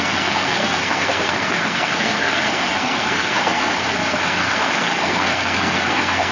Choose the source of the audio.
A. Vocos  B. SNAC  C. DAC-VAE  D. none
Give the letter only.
B